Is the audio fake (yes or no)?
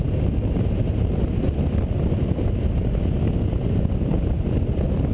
no